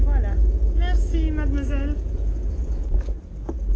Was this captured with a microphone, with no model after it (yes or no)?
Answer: yes